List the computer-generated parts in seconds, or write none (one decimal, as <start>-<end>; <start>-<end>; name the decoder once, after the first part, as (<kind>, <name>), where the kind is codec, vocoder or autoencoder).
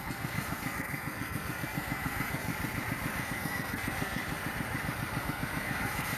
0.0-2.5 (codec, SNAC); 3.2-4.2; 5.2-6.2